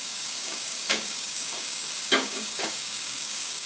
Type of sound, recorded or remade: remade